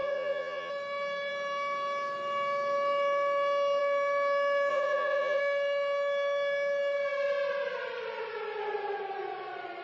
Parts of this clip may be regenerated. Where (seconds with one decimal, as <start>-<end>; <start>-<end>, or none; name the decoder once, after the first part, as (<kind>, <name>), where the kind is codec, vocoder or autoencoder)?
0.0-0.7 (vocoder, Vocos); 4.7-5.4